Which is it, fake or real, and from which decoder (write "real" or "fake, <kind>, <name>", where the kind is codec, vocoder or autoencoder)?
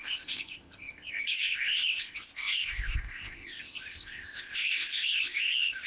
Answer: fake, codec, ZipCodec